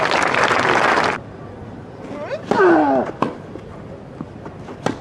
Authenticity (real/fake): real